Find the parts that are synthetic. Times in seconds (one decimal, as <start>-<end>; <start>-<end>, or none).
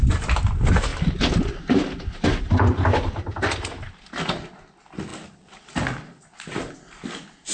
5.1-6.6